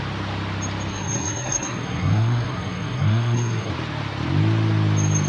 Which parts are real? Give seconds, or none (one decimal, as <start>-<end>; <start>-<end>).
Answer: 0.0-0.9; 3.7-5.3